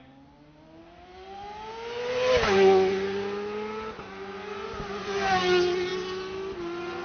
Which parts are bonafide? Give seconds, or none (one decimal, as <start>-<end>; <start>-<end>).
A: 0.0-7.0